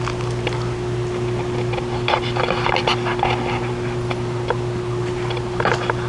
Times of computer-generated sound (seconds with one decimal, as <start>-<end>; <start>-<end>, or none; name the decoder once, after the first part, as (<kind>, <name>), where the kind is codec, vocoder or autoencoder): none

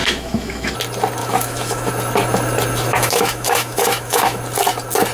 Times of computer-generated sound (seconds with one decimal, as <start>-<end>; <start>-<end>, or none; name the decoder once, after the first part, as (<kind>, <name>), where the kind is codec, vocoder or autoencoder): 0.0-0.7 (autoencoder, DAC-VAE); 1.2-1.9; 2.9-4.4

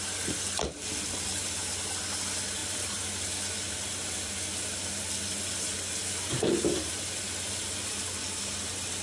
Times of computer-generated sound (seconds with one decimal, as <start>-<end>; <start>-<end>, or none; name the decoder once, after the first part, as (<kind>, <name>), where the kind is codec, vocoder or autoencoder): none

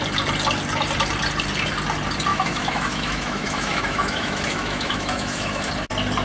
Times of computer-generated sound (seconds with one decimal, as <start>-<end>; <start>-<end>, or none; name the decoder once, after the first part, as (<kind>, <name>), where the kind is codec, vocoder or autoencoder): 2.3-5.7 (autoencoder, DAC-VAE)

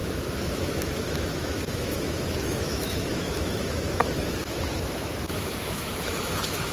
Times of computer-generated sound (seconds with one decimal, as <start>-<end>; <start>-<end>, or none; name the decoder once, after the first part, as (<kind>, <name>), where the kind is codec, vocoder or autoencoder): 0.0-6.7 (autoencoder, DAC-VAE)

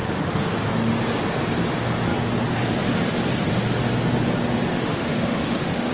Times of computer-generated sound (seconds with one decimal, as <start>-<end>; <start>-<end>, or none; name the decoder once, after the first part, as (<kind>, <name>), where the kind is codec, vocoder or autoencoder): 0.0-0.6 (autoencoder, DAC-VAE); 4.7-5.9

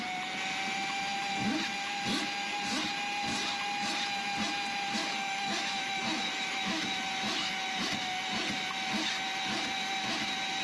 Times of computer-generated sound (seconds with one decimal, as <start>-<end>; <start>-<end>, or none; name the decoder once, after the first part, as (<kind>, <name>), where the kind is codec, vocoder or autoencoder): 5.0-7.8 (autoencoder, DAC-VAE)